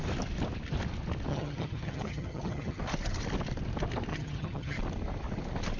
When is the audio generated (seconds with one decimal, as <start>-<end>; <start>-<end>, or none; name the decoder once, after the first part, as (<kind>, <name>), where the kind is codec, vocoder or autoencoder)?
1.3-2.8 (vocoder, HiFi-GAN); 4.1-4.8